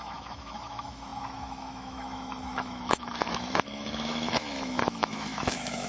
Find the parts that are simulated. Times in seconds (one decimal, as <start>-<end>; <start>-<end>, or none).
0.0-5.9